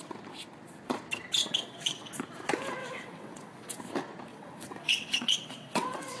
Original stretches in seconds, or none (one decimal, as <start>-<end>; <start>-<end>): 0.0-1.4; 2.1-2.8; 3.8-4.3